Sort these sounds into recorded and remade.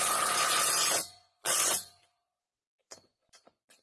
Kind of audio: remade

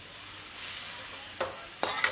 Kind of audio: recorded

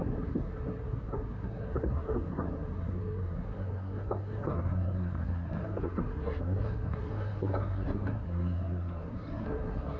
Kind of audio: remade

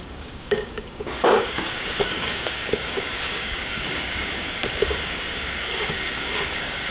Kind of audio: remade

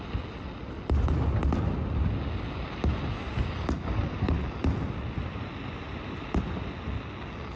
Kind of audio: recorded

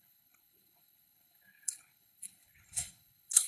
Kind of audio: remade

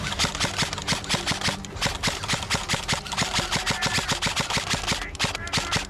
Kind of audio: recorded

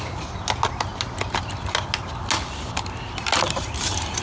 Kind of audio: recorded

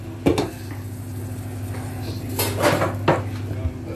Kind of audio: recorded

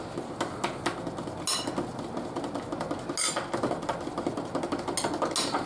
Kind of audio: recorded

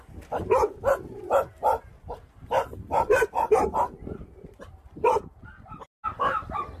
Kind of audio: recorded